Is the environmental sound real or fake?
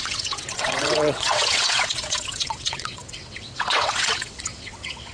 fake